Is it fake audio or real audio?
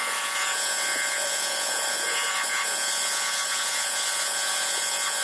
fake